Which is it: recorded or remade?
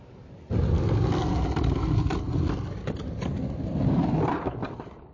recorded